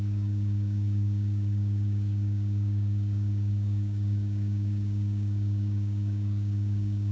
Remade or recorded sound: remade